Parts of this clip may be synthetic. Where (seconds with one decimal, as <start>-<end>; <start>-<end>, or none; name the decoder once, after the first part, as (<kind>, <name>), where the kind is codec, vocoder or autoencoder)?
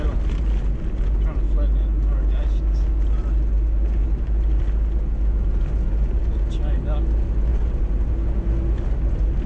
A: none